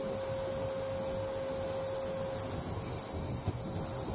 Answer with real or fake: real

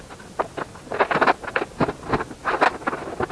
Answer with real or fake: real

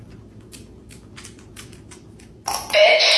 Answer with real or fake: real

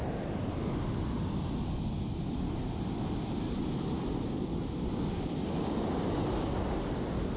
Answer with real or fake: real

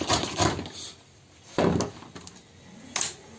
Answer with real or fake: real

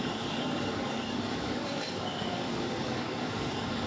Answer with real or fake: fake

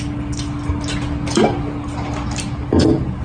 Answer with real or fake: real